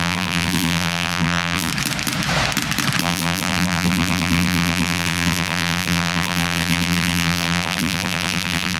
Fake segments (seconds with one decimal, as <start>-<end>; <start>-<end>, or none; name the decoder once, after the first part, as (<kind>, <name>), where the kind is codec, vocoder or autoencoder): 0.0-1.7 (vocoder, BigVGAN v2); 3.0-8.8